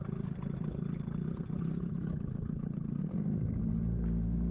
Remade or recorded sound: recorded